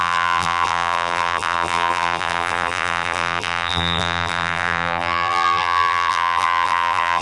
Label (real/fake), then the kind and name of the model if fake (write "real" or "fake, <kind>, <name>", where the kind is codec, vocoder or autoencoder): fake, vocoder, BigVGAN v2